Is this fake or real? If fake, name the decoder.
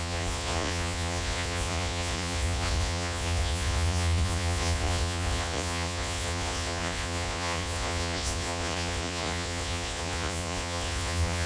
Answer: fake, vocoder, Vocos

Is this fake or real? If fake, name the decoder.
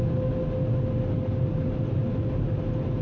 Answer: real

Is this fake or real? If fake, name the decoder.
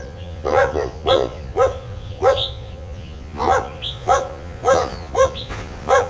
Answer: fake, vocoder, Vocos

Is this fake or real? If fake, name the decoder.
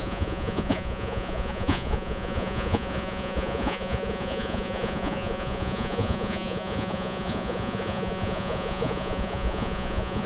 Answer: fake, vocoder, Vocos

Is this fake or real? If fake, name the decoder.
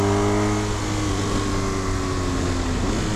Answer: real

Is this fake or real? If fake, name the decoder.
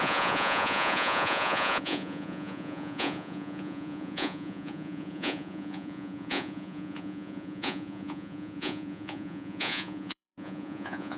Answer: fake, vocoder, Vocos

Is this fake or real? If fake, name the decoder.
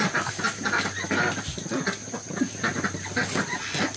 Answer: real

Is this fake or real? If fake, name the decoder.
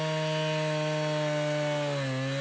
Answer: real